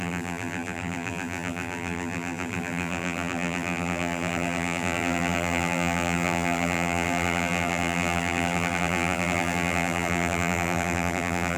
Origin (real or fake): fake